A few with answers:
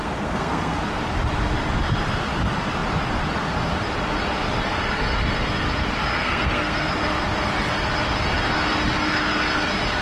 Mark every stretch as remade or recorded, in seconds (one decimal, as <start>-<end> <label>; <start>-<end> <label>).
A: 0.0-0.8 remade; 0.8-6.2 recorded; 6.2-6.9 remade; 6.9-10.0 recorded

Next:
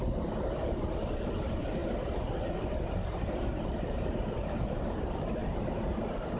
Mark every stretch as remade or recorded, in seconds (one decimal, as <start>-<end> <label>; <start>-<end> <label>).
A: 0.0-6.4 recorded

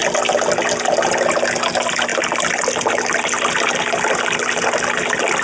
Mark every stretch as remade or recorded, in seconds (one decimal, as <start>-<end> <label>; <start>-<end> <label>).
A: 0.0-5.4 recorded